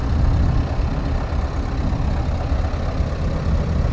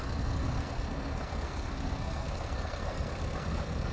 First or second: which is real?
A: first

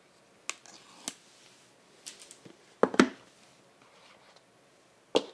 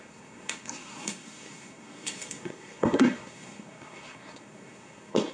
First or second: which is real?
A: first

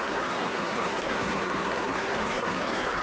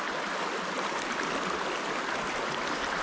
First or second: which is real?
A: second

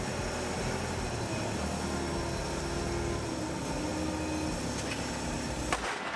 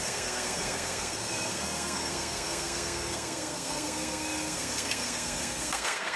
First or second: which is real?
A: first